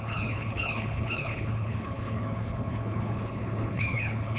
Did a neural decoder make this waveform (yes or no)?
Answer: yes